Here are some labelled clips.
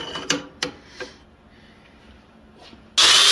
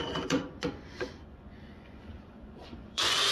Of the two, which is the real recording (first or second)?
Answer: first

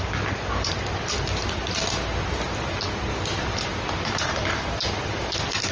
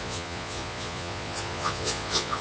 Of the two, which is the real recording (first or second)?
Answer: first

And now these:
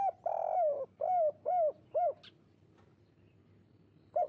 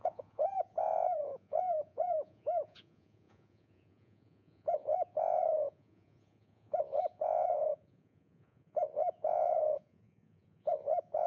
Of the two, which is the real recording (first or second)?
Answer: first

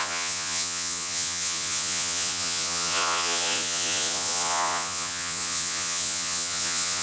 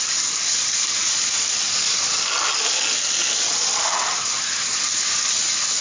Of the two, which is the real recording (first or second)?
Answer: second